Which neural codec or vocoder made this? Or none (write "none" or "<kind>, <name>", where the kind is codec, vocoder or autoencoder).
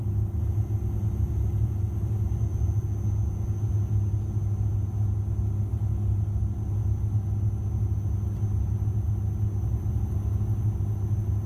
none